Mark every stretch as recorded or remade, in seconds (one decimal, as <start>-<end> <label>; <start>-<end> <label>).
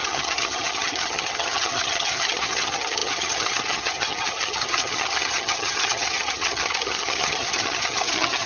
0.0-8.5 remade